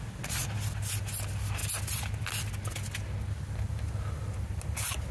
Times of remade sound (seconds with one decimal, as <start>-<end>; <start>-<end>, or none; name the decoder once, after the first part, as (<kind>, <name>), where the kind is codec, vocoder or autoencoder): none